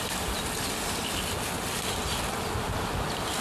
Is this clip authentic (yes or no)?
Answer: yes